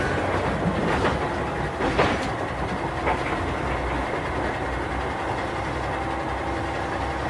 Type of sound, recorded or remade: recorded